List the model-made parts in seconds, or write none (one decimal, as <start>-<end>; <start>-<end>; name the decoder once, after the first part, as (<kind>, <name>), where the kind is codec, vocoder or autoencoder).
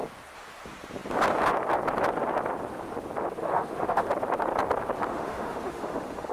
3.4-4.1 (autoencoder, DAC-VAE); 5.1-6.3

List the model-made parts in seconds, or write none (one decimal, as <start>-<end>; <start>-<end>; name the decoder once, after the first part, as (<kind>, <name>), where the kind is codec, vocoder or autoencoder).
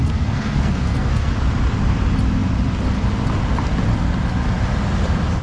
0.0-1.3 (codec, SNAC)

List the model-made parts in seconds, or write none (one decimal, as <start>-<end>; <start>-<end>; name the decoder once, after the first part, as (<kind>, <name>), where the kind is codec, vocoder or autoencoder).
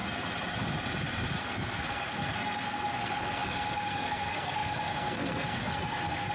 1.4-6.3 (codec, SNAC)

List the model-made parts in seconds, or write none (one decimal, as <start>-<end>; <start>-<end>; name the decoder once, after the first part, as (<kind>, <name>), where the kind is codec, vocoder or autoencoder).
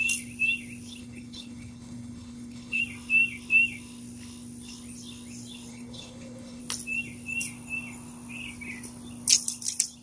1.0-2.8 (codec, HILCodec); 5.7-6.6